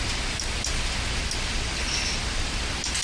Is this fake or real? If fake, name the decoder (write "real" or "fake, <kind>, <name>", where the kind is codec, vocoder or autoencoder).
real